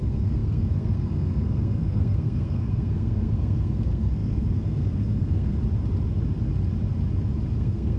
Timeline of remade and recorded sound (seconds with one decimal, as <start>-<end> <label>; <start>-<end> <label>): 0.0-5.6 remade; 5.6-7.5 recorded; 7.5-8.0 remade